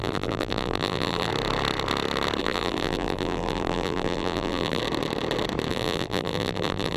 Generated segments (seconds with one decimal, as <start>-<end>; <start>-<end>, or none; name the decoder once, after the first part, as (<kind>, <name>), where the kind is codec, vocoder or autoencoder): 0.0-1.3 (vocoder, BigVGAN v2); 2.4-4.8; 5.7-7.0